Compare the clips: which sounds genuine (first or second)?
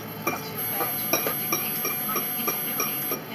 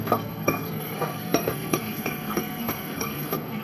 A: first